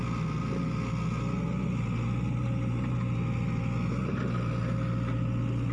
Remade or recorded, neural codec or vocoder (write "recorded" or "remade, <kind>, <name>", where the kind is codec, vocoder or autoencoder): recorded